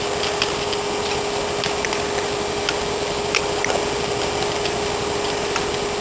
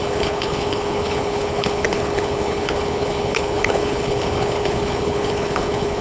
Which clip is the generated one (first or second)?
second